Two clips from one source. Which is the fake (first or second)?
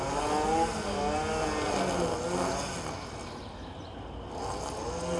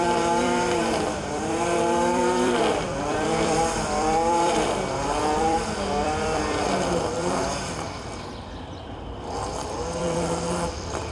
second